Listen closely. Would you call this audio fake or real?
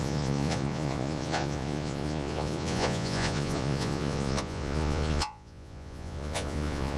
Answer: fake